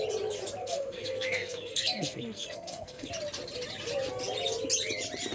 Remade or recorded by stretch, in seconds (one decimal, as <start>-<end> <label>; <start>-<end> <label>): 0.0-0.6 recorded; 0.6-3.1 remade; 3.1-5.3 recorded